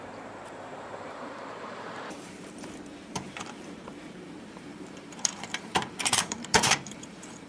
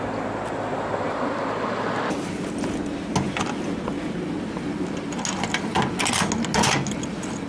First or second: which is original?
second